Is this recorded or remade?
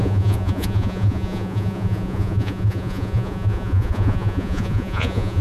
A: remade